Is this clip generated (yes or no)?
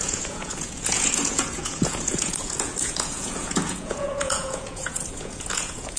yes